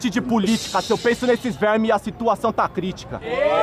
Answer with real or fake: real